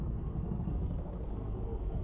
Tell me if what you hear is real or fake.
fake